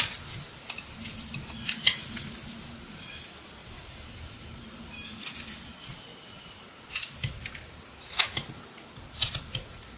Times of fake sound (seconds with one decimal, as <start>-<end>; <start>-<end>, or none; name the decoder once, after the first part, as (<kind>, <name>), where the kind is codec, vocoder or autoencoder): 3.6-4.9 (vocoder, BigVGAN v2); 6.1-6.8